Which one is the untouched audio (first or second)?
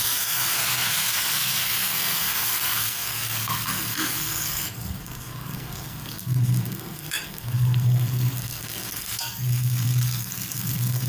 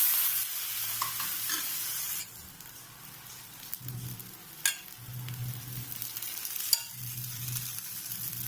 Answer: second